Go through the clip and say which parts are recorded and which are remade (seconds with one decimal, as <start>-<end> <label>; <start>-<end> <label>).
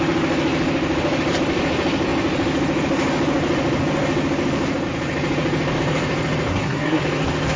0.0-6.5 recorded; 6.5-7.0 remade; 7.0-7.6 recorded